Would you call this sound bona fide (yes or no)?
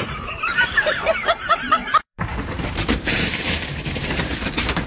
no